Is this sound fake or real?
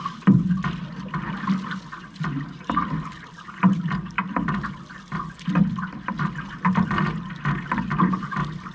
real